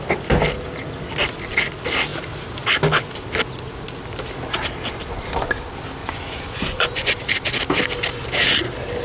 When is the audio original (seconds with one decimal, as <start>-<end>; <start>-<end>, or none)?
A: 0.0-6.0; 7.1-9.0